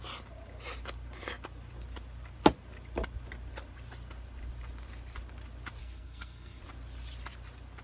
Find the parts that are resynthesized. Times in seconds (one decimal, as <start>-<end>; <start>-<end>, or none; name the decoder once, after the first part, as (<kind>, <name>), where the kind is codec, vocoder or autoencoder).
5.8-6.6 (codec, SNAC)